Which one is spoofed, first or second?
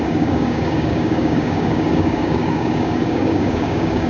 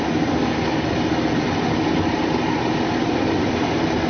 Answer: first